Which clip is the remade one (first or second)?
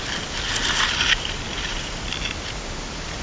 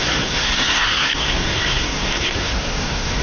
second